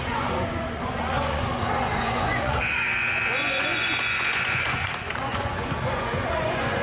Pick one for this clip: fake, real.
fake